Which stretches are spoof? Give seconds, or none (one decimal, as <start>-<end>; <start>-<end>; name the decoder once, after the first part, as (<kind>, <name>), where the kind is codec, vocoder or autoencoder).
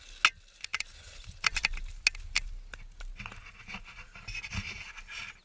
0.7-1.8 (vocoder, BigVGAN v2); 3.1-4.9